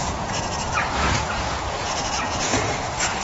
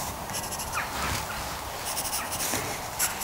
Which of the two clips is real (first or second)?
second